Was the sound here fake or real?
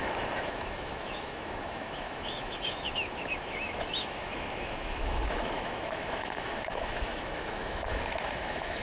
fake